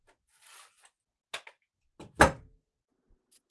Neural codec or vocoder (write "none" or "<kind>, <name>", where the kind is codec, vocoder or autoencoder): none